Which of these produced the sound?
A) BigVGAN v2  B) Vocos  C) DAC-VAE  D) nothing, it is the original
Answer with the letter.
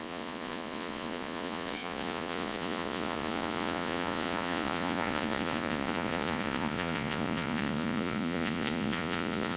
B